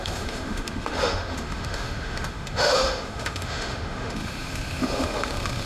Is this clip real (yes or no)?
no